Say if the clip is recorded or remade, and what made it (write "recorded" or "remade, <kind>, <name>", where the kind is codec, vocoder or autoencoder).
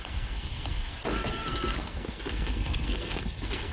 remade, codec, SNAC